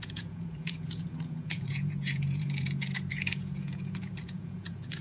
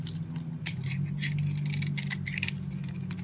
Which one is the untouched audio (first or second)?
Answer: second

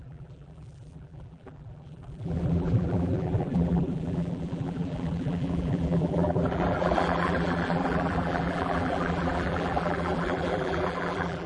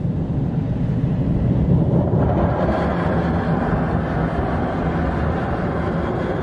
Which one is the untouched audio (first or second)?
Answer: second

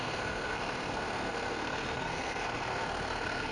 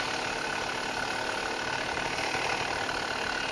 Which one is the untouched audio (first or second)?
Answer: second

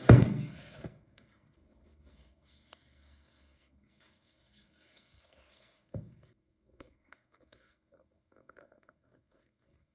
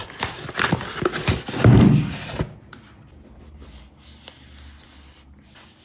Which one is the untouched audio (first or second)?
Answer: second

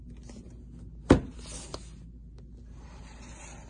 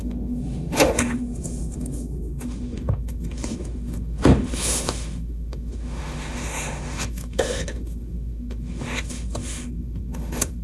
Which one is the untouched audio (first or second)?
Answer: first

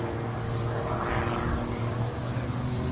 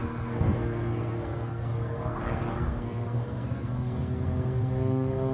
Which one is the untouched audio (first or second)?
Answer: first